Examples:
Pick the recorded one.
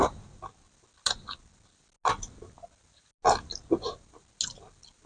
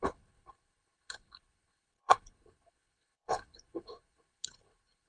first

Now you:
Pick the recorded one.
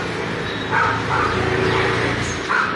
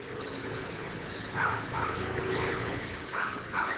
first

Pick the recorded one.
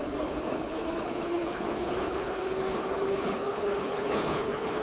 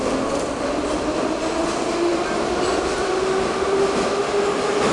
second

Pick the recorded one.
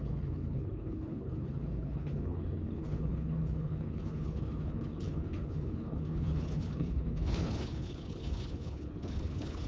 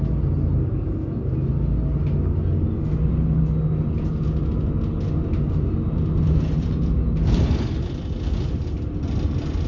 second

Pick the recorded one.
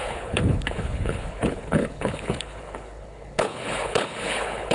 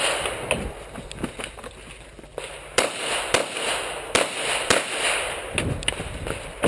second